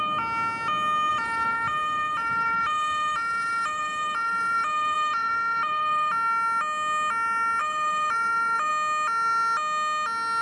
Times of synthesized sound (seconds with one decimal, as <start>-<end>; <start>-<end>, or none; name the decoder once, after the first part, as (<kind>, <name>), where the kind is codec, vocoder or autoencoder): 1.1-6.1 (vocoder, BigVGAN v2); 7.6-8.7